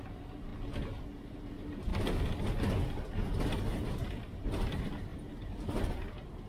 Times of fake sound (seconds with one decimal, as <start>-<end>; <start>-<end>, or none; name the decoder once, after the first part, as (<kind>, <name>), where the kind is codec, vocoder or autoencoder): 0.0-0.5 (vocoder, BigVGAN v2); 1.3-1.9; 3.4-6.5